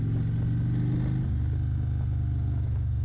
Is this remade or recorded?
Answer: recorded